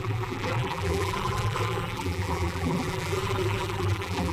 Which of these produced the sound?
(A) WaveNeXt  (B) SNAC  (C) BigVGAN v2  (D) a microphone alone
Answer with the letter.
C